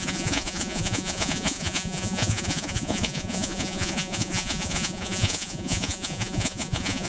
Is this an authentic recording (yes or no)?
no